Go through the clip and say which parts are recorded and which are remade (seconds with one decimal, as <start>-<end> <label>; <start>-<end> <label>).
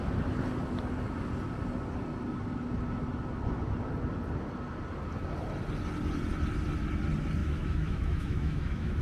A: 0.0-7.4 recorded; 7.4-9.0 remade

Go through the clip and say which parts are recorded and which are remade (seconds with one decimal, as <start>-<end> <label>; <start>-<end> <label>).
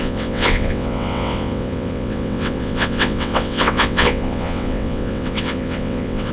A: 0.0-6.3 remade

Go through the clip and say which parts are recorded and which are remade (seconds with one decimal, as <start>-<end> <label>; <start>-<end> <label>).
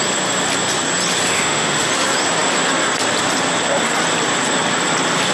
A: 0.0-1.3 recorded; 1.3-1.9 remade; 1.9-5.3 recorded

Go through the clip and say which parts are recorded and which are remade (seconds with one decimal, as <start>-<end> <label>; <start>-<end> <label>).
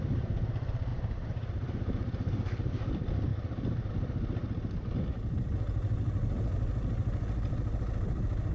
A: 0.0-0.9 recorded; 0.9-2.7 remade; 2.7-4.4 recorded; 4.4-5.3 remade; 5.3-8.5 recorded